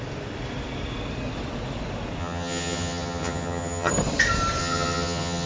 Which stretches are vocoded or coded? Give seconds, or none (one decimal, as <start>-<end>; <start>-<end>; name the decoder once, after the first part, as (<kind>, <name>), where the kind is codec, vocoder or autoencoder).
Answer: 2.2-3.9 (vocoder, HiFi-GAN); 4.6-5.5

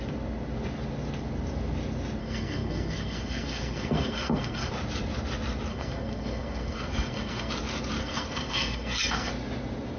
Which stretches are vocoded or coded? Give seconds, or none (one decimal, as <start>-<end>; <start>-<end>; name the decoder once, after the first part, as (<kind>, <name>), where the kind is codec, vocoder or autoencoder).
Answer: 2.2-4.7 (codec, SNAC); 5.7-7.5; 8.0-9.3

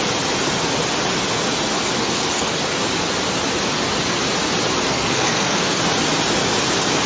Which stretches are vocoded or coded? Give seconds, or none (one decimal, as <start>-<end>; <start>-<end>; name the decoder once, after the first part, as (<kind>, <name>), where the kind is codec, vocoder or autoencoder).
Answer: 2.0-2.6 (codec, SNAC); 4.9-5.8

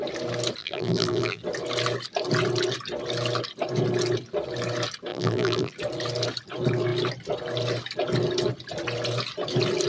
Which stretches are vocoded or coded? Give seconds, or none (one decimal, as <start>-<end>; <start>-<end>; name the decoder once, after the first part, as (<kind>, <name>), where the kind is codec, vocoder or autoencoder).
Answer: 0.6-1.4 (vocoder, BigVGAN v2); 5.1-5.7

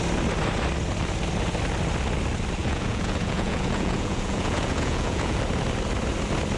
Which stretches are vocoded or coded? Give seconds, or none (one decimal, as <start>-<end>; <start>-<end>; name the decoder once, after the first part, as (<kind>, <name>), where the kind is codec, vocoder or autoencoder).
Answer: 2.6-5.4 (vocoder, Vocos)

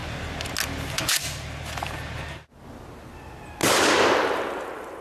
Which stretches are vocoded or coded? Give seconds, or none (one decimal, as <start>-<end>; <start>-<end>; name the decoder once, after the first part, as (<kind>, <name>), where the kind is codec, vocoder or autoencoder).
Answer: none

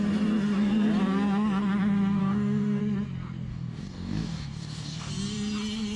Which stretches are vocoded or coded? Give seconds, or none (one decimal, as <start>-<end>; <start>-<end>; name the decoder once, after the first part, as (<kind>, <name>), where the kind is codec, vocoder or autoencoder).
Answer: 2.2-2.8 (codec, DAC); 3.5-5.1

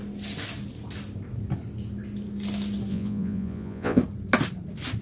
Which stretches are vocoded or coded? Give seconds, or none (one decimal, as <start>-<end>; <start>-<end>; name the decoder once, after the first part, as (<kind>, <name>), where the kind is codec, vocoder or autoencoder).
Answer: 2.9-4.0 (vocoder, Vocos)